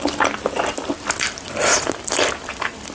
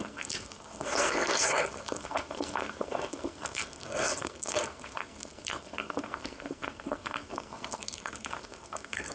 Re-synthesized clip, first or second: second